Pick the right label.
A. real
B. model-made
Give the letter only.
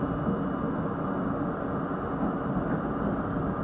A